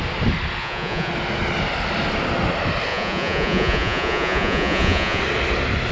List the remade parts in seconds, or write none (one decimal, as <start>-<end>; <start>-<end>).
0.6-1.1; 2.9-5.2